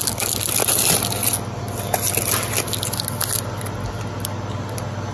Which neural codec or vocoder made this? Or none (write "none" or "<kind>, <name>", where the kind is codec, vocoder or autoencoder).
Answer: none